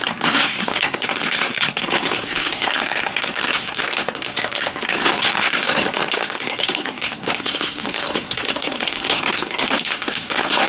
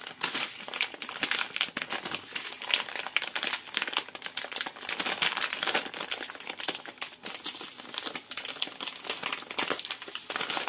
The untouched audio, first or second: second